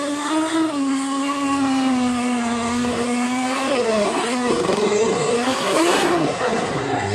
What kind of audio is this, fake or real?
fake